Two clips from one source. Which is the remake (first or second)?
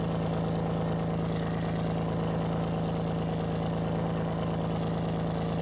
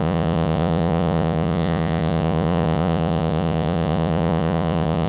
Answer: second